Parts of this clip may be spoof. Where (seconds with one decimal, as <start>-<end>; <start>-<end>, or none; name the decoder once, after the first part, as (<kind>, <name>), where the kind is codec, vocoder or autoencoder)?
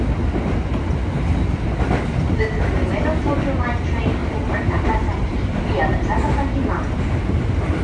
4.2-5.7 (vocoder, BigVGAN v2)